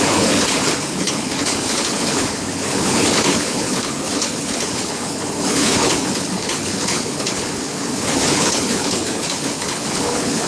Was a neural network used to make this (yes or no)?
yes